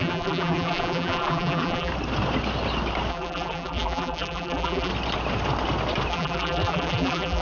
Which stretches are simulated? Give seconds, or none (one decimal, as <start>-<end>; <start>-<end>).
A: 0.0-1.9; 3.1-4.9; 6.1-7.4